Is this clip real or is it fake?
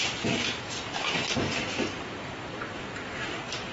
real